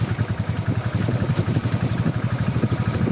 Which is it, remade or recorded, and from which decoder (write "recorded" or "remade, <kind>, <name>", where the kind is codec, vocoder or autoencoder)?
remade, vocoder, BigVGAN v2